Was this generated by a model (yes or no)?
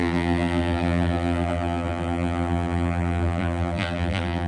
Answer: yes